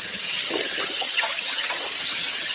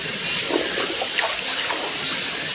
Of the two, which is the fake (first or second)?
first